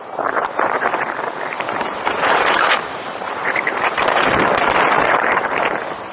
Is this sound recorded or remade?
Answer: remade